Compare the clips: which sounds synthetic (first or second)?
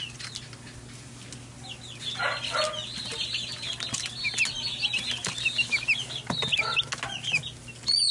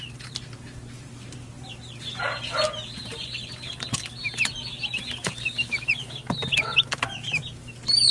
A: second